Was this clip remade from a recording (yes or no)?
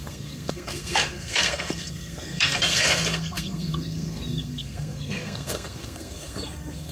yes